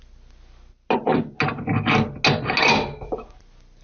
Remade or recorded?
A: recorded